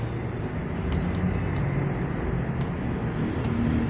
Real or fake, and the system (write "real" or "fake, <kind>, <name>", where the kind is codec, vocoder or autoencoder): real